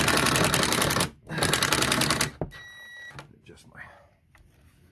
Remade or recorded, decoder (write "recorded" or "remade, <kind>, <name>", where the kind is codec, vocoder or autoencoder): recorded